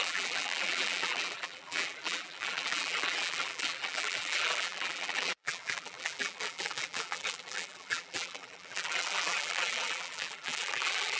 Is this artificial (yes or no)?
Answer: yes